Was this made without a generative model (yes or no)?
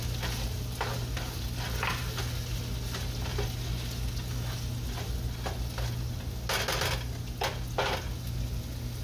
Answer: yes